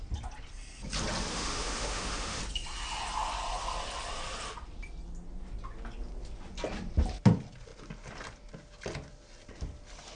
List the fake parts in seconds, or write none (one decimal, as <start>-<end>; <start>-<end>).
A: 1.3-2.4